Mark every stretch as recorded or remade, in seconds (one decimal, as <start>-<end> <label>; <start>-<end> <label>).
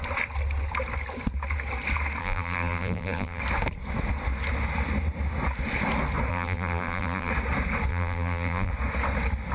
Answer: 0.0-2.2 recorded; 2.2-3.4 remade; 3.4-6.3 recorded; 6.3-7.3 remade; 7.3-7.9 recorded; 7.9-8.7 remade; 8.7-9.5 recorded